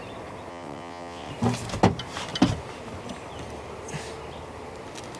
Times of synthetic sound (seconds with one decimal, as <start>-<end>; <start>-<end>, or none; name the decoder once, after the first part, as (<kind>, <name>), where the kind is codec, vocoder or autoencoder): 0.5-1.3 (vocoder, WaveNeXt)